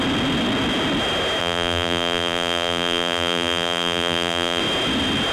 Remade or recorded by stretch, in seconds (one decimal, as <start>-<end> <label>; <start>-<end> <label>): 0.0-1.4 recorded; 1.4-4.6 remade; 4.6-5.3 recorded